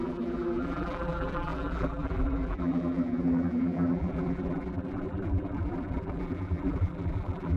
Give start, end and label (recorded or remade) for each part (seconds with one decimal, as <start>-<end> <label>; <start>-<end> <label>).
0.0-7.6 remade